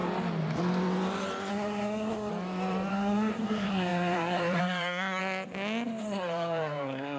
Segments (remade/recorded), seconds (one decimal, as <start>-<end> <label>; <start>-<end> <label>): 0.0-1.5 recorded; 1.5-2.3 remade; 2.3-2.9 recorded; 2.9-5.2 remade; 5.2-6.0 recorded; 6.0-7.2 remade